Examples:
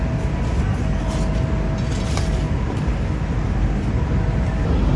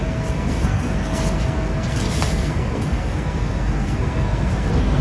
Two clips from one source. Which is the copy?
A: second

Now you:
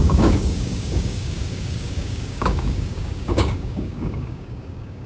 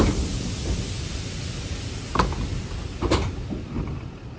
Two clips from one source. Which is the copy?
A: first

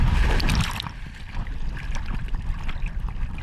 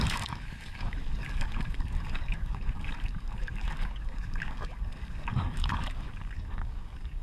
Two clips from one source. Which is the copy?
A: second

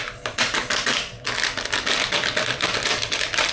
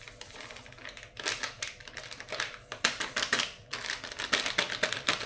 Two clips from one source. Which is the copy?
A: second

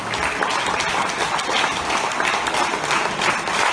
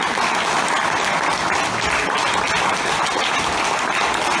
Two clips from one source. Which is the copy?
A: first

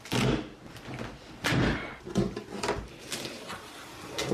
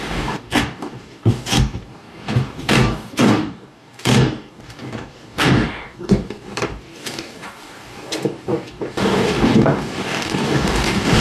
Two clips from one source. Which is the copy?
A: second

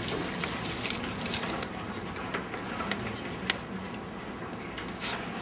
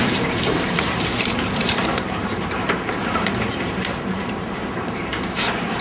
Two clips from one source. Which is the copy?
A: second